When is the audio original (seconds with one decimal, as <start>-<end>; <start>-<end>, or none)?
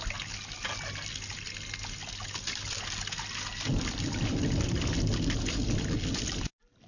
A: 0.0-6.9